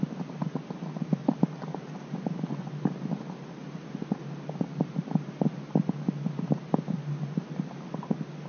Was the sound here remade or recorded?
recorded